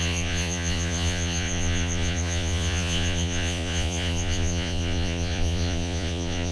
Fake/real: fake